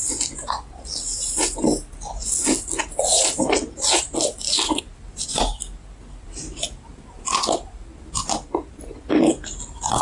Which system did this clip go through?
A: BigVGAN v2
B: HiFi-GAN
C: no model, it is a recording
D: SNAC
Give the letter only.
C